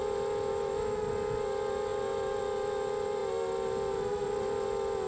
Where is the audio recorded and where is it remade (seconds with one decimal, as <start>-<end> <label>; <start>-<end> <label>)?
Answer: 0.0-0.5 recorded; 0.5-1.0 remade; 1.0-5.1 recorded